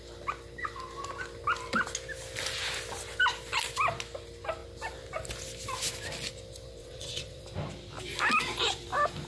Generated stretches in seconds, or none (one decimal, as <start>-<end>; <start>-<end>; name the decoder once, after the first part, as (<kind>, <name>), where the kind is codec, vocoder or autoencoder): 6.8-7.4 (vocoder, WaveNeXt)